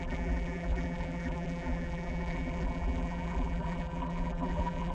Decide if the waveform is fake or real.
fake